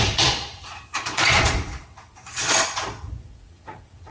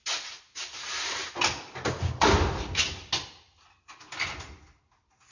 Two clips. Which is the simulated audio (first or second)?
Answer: first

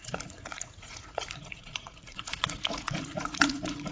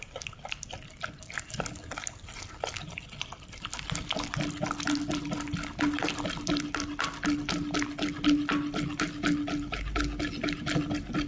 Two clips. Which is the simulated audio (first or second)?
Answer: first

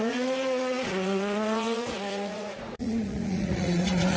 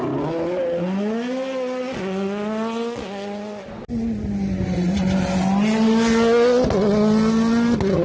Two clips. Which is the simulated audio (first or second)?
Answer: first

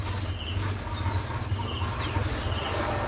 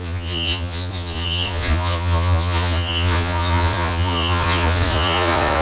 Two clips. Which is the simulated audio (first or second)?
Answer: second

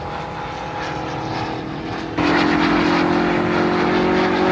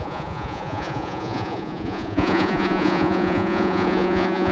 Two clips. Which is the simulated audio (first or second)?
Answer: second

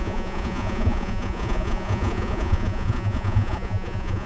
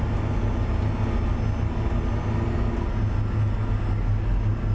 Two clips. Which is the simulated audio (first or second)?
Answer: first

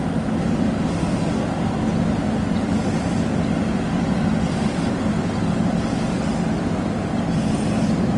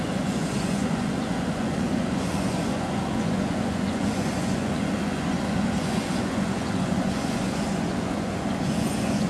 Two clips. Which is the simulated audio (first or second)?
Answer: second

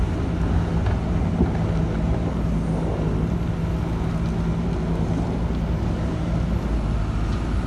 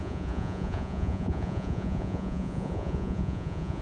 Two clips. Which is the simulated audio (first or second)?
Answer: second